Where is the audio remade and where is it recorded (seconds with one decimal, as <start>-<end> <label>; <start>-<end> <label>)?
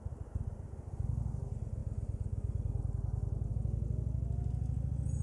0.0-5.2 recorded